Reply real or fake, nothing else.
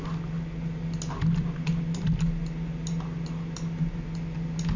real